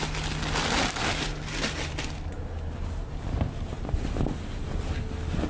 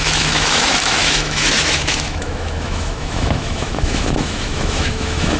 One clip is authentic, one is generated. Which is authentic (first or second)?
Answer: first